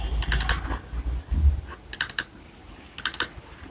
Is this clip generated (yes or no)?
no